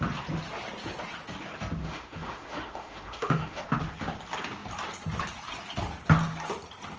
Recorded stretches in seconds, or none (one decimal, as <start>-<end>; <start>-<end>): 0.0-1.8; 3.6-7.0